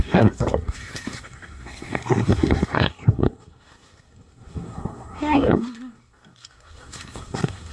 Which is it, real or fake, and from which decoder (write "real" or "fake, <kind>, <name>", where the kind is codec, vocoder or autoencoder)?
fake, codec, SNAC